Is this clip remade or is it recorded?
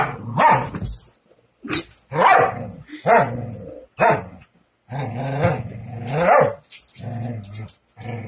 recorded